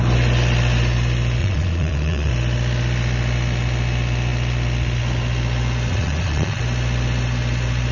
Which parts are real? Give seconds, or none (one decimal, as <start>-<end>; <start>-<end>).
0.0-1.4; 2.3-5.9; 6.6-7.9